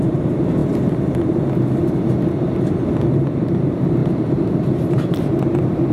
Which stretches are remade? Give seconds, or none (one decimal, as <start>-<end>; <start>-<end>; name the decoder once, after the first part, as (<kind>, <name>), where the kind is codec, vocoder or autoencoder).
0.0-0.6 (vocoder, BigVGAN v2); 3.1-5.9